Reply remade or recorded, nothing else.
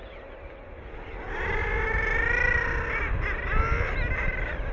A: recorded